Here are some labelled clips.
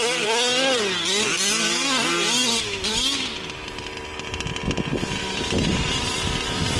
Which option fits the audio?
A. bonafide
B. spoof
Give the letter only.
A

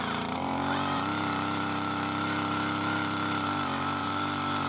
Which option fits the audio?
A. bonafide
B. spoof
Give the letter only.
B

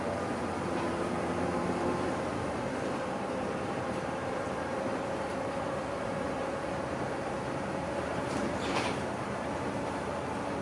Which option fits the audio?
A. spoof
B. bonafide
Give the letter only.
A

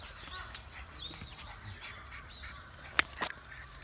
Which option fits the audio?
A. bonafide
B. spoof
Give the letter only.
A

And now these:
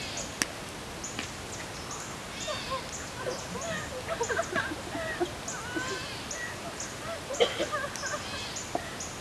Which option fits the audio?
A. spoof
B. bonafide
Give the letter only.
B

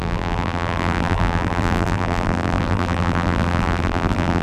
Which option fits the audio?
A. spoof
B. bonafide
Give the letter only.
A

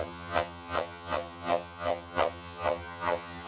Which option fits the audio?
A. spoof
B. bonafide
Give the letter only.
A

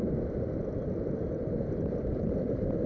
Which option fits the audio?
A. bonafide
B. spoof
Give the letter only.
A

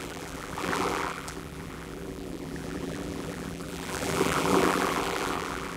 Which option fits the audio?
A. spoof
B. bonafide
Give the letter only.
A